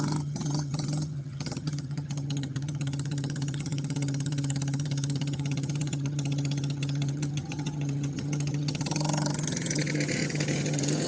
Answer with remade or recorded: remade